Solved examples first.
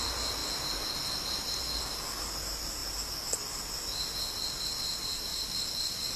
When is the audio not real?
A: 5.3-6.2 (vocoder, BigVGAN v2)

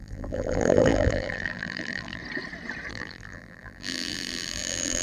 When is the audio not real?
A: 0.0-2.2 (vocoder, BigVGAN v2); 2.9-5.0

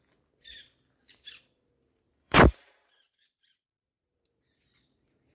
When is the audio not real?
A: 2.1-4.3 (vocoder, BigVGAN v2)

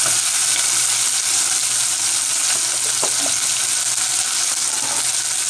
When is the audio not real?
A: none

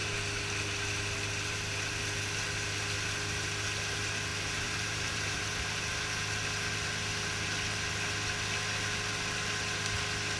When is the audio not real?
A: 4.3-5.4 (vocoder, BigVGAN v2)